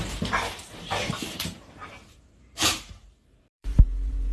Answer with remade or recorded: remade